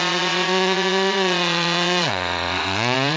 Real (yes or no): no